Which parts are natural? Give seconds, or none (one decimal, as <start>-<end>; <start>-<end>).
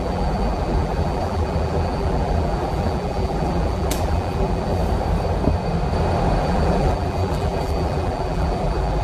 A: 4.8-6.4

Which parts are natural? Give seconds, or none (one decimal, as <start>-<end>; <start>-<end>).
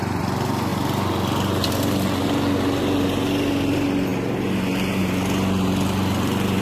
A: 0.0-6.6